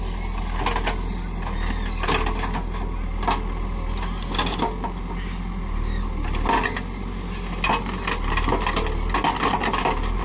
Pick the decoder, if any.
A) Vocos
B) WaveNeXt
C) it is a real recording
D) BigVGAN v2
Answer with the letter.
C